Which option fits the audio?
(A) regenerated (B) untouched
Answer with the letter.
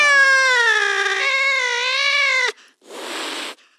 B